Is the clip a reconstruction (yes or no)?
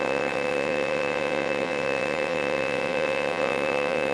yes